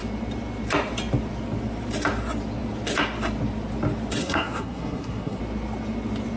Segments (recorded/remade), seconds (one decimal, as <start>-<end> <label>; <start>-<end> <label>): 0.0-4.2 recorded; 4.2-5.4 remade; 5.4-6.4 recorded